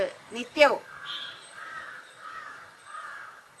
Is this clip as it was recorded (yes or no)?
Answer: no